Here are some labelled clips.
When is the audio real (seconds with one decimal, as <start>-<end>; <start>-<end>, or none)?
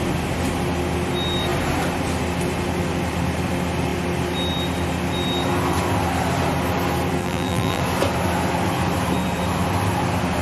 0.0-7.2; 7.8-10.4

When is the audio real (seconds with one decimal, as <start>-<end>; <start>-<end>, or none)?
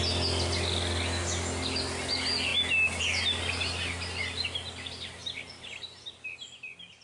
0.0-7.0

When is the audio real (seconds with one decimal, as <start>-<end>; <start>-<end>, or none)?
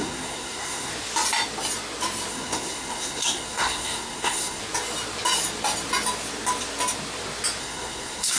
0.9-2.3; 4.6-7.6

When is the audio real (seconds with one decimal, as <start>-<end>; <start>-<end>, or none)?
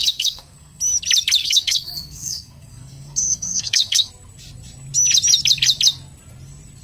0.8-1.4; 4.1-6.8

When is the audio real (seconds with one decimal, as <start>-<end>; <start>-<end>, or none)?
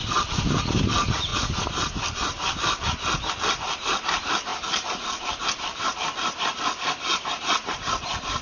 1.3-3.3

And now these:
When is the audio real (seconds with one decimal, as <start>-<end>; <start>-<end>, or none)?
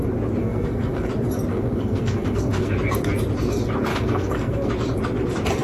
0.0-0.4; 1.1-1.5; 2.7-3.9; 4.7-5.6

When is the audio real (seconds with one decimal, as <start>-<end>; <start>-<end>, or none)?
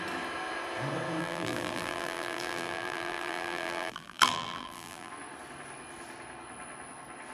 0.0-1.2; 5.1-7.3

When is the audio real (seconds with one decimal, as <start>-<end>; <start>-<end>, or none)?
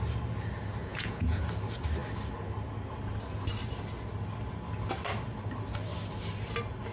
0.0-0.8; 1.4-6.9